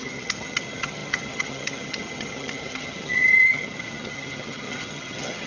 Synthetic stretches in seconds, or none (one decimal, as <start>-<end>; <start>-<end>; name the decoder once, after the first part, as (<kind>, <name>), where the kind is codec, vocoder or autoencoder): 0.0-5.5 (vocoder, HiFi-GAN)

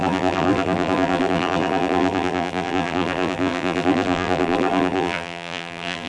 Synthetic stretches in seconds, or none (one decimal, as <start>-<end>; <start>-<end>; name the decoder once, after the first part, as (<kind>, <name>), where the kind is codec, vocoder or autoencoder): 0.0-6.1 (vocoder, BigVGAN v2)